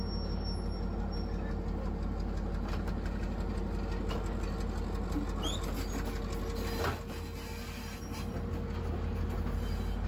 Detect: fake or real real